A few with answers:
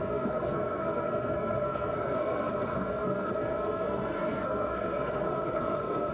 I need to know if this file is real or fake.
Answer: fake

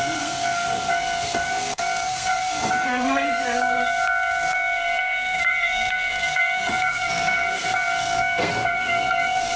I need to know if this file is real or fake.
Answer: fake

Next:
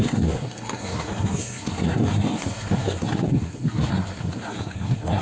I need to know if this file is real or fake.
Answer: fake